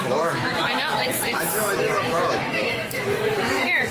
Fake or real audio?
fake